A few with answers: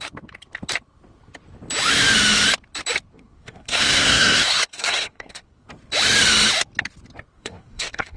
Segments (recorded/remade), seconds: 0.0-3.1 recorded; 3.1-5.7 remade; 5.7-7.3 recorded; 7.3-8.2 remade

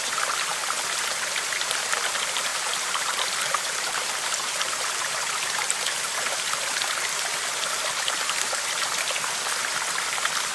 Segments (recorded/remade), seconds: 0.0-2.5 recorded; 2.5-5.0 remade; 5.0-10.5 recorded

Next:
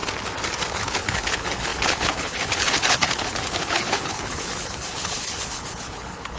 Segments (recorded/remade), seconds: 0.0-0.7 recorded; 0.7-6.4 remade

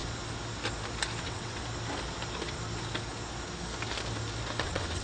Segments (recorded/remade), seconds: 0.0-1.2 recorded; 1.2-1.6 remade; 1.6-4.6 recorded; 4.6-5.0 remade

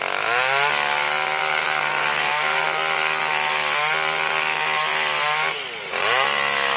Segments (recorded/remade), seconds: 0.0-1.4 recorded; 1.4-2.6 remade; 2.6-6.8 recorded